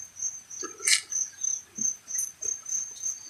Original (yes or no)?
yes